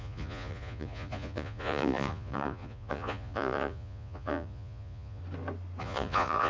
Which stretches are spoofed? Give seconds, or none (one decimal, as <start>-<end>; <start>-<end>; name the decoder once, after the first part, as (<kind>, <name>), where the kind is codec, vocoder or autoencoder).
0.0-5.2 (vocoder, Vocos); 5.8-6.5